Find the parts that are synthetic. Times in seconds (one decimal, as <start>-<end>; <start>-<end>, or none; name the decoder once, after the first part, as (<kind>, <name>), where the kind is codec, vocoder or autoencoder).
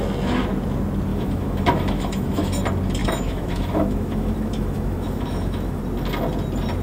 1.1-2.6 (autoencoder, DAC-VAE); 3.0-5.8